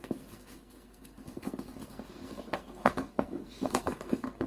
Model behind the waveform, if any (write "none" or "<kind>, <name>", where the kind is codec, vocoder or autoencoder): codec, SNAC